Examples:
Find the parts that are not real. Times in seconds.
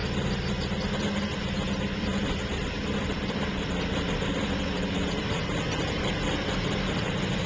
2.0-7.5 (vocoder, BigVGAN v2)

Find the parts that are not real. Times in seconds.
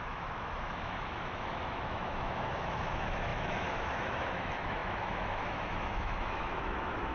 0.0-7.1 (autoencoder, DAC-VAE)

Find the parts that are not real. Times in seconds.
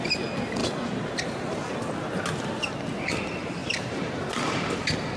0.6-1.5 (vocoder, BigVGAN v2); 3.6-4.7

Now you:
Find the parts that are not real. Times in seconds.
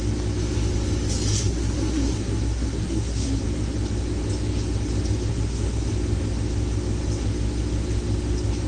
1.3-3.4 (codec, SNAC); 5.3-5.9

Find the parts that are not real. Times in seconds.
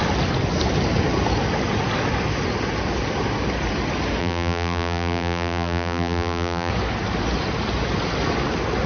4.2-6.7 (vocoder, BigVGAN v2)